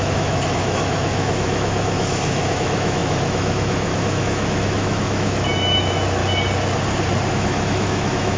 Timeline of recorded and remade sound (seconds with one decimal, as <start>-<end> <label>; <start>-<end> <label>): 0.0-6.2 remade; 6.2-7.3 recorded; 7.3-8.4 remade